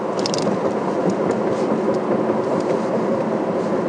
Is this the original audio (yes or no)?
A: yes